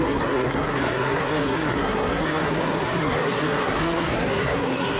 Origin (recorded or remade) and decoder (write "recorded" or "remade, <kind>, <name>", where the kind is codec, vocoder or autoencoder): remade, codec, SNAC